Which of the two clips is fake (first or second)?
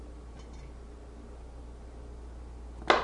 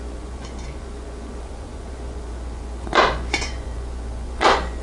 second